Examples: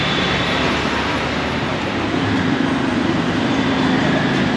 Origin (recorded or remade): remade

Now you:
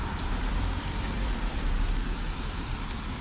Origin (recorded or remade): remade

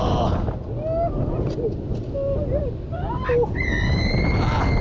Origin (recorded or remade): recorded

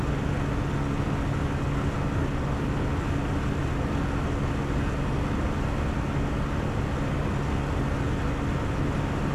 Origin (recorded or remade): recorded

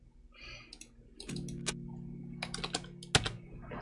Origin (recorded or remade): recorded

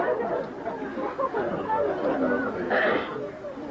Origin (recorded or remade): recorded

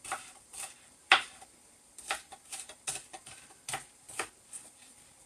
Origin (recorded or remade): remade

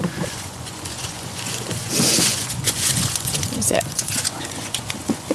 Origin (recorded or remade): remade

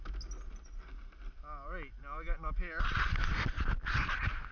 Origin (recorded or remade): recorded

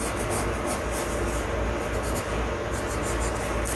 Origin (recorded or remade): recorded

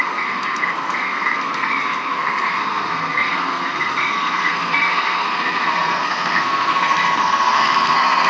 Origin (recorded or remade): remade